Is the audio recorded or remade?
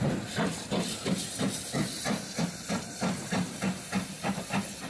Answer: recorded